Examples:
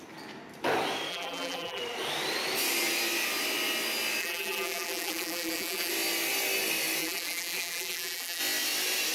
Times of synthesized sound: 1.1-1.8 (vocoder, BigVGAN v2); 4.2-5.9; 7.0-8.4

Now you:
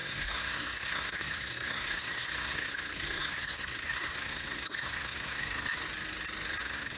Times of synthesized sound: 0.0-5.8 (codec, SNAC); 6.6-7.0

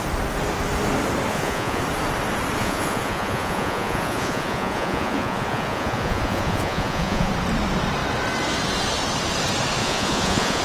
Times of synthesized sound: 1.3-1.8 (vocoder, Vocos); 2.6-7.3; 9.8-10.6

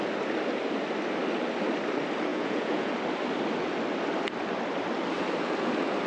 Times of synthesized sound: 2.3-2.9 (vocoder, Vocos)

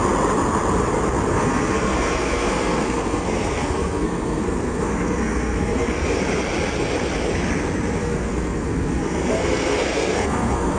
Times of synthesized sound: 1.3-6.2 (codec, SNAC); 8.0-10.8